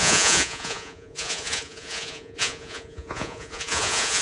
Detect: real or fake fake